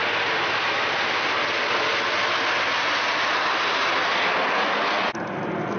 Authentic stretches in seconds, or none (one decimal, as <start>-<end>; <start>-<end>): 0.0-5.8